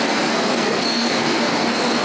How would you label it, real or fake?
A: fake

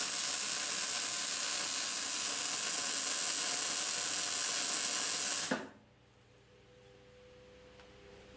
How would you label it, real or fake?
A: real